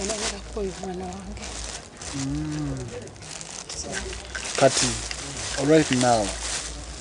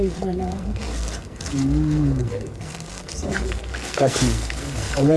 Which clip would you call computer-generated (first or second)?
second